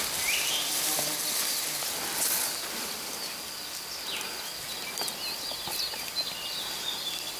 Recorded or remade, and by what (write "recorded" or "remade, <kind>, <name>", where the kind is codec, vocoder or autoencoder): recorded